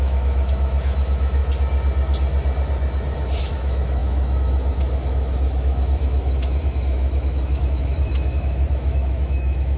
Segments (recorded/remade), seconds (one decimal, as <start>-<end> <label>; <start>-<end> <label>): 0.0-1.4 remade; 1.4-3.4 recorded; 3.4-9.8 remade